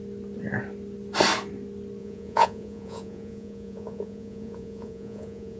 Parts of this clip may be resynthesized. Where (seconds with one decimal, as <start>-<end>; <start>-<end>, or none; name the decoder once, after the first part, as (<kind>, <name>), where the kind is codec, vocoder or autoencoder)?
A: 2.0-5.6 (vocoder, Vocos)